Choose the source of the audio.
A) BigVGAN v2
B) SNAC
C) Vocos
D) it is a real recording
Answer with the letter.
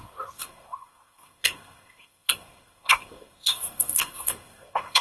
B